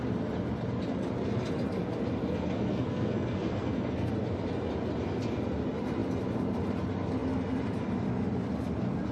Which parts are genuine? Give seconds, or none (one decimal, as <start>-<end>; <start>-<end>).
0.0-2.2; 4.1-9.1